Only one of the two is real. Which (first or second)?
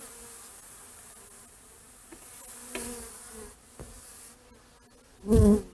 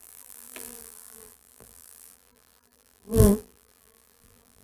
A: first